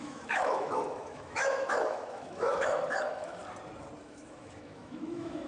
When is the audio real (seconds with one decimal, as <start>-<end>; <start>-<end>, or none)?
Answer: 3.4-4.0